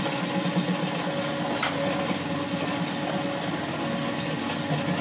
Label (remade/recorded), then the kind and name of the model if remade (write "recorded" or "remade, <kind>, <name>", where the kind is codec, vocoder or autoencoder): recorded